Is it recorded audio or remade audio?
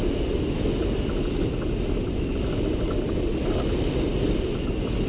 recorded